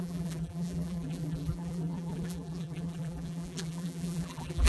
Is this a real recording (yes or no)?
no